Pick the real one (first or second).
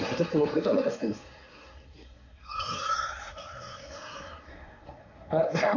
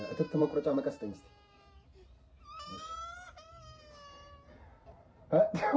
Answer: second